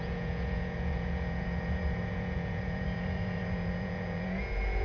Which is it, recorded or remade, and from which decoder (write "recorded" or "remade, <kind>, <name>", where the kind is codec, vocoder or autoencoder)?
remade, vocoder, Vocos